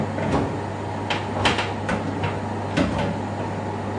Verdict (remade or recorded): recorded